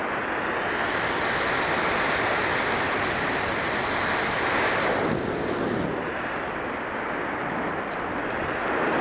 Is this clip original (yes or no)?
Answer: yes